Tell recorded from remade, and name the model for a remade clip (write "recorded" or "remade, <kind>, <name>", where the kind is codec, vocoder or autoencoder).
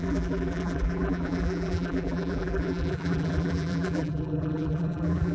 remade, vocoder, BigVGAN v2